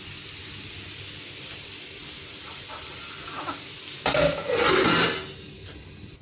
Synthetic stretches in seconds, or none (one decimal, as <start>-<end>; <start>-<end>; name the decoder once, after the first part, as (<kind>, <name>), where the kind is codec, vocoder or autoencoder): none